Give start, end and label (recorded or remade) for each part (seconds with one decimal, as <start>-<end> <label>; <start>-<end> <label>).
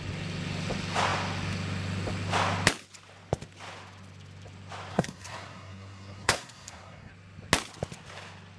0.0-4.9 recorded; 4.9-7.1 remade; 7.1-8.6 recorded